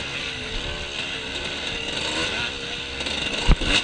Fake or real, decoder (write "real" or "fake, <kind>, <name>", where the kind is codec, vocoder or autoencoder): real